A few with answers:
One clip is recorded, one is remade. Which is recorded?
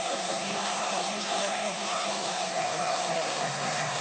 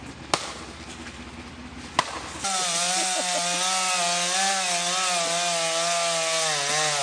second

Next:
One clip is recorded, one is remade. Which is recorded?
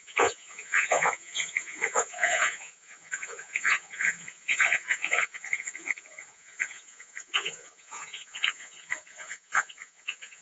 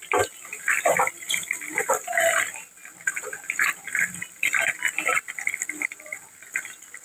second